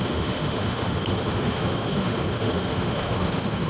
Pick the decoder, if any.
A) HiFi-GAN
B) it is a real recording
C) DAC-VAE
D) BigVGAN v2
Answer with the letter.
C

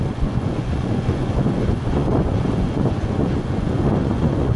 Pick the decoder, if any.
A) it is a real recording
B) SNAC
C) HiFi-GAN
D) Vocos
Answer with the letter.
D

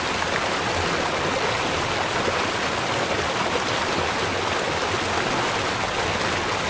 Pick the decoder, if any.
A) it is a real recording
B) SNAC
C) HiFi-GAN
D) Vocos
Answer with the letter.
A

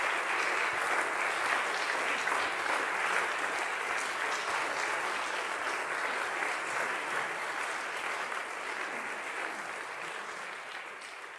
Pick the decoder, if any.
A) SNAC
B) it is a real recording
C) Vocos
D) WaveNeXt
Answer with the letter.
B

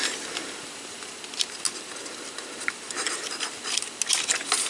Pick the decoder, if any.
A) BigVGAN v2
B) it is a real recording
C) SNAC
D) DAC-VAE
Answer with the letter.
B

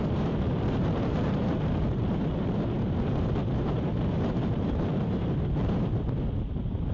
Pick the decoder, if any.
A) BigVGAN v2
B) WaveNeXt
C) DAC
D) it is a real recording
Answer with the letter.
A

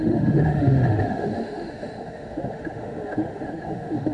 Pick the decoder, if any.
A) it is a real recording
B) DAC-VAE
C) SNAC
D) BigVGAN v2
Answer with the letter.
B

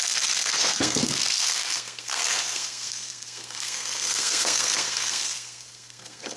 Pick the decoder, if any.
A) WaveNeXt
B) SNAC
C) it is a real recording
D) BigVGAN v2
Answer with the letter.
B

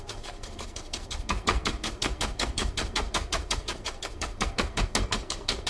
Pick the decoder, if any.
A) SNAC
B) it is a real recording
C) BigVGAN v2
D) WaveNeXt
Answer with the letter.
A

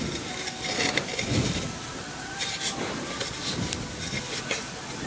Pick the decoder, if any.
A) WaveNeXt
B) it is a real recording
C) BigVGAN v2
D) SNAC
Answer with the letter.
B